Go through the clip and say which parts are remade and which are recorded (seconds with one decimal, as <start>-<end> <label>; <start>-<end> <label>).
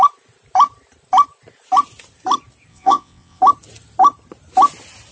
0.0-2.7 recorded; 2.7-3.4 remade; 3.4-5.1 recorded